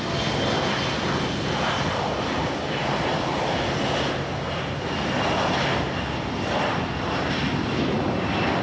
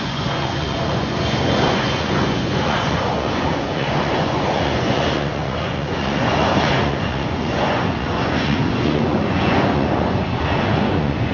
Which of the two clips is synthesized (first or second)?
second